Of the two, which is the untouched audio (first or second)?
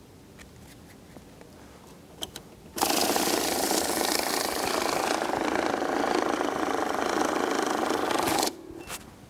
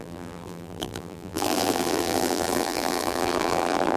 first